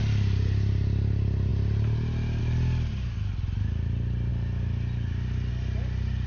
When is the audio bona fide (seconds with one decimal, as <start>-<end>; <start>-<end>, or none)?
0.0-6.3